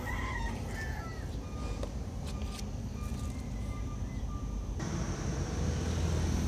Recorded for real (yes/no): yes